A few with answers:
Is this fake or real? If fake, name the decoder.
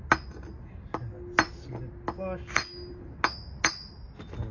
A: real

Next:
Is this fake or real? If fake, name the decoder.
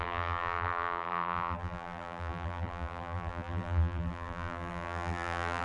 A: fake, vocoder, BigVGAN v2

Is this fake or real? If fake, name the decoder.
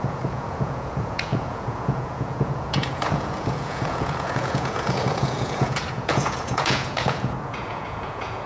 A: fake, vocoder, Vocos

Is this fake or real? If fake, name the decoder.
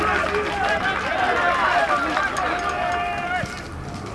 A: real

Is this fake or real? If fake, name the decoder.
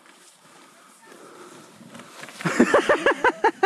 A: real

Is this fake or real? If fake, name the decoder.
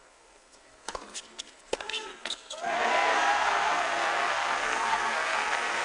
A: fake, codec, SNAC